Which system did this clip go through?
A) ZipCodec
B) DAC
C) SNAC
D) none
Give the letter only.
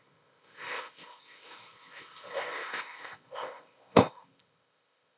A